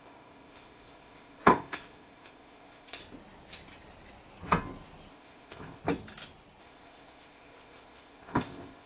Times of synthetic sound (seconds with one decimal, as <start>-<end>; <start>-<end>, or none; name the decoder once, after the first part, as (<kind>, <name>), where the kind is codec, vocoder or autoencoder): 0.0-3.0 (codec, ZipCodec); 5.1-5.8; 6.6-8.9